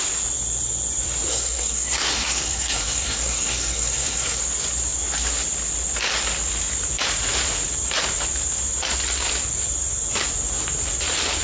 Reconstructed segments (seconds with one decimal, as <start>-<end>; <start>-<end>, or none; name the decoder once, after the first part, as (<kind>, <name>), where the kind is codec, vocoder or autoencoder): 1.3-4.4 (codec, SNAC)